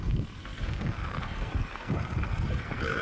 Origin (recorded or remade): remade